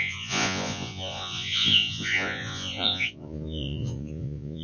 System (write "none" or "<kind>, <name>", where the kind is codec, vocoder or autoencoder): vocoder, Vocos